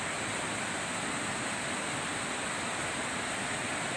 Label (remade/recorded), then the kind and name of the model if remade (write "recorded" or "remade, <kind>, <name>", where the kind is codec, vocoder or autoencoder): recorded